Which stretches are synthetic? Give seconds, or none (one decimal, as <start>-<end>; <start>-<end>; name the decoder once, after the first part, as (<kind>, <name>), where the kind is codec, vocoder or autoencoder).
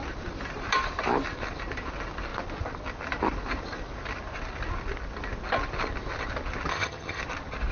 6.7-7.2 (vocoder, HiFi-GAN)